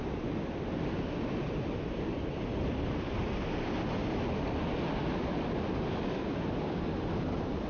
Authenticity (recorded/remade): recorded